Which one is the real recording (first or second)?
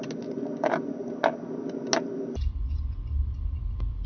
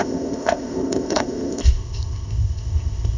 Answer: first